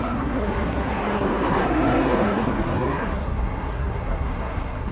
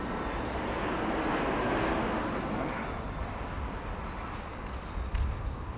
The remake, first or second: first